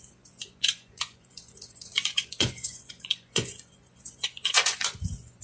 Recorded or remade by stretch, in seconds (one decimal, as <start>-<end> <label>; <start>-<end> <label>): 0.0-5.4 remade